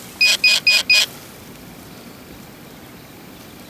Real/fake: real